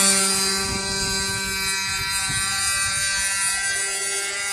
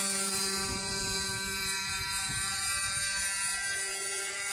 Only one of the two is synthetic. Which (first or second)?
second